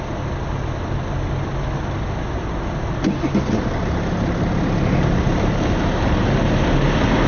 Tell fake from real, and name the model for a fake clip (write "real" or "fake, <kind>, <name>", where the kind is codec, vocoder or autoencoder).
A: real